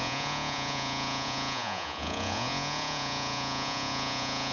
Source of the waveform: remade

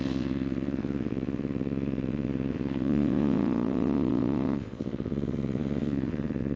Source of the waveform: remade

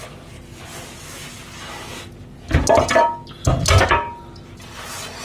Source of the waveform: recorded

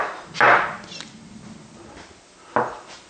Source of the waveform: recorded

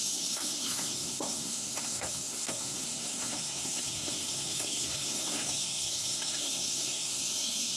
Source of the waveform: remade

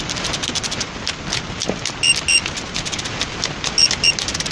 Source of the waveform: recorded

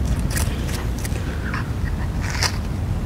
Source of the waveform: recorded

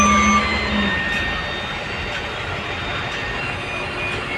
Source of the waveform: recorded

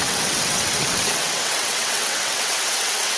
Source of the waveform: remade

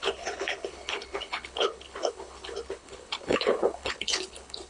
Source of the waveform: remade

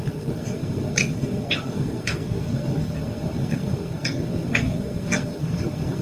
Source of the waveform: remade